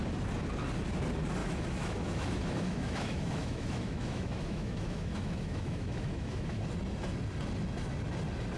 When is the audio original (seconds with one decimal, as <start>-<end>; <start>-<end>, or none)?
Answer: 0.0-1.4; 6.6-8.6